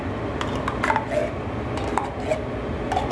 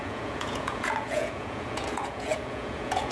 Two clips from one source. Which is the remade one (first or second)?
second